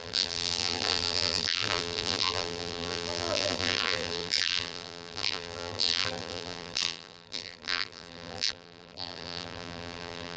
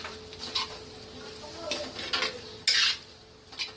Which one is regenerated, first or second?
first